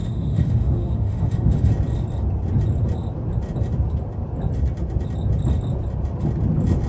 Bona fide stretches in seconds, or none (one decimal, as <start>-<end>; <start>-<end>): 1.7-6.9